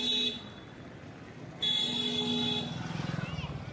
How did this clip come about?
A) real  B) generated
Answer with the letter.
A